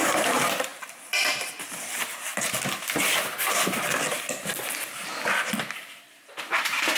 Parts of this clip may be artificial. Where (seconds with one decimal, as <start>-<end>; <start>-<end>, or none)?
0.0-2.3; 6.5-7.0